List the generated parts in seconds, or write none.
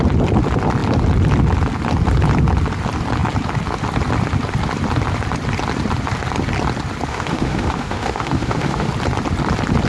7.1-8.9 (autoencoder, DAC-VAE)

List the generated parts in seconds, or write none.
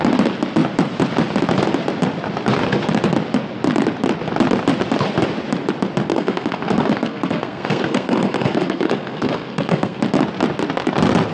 6.1-10.0 (codec, SNAC)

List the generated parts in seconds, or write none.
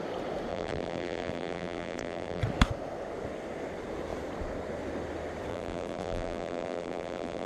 0.5-2.4 (vocoder, BigVGAN v2); 5.5-7.5